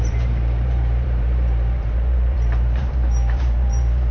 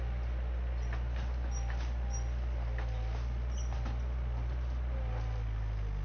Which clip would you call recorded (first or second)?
second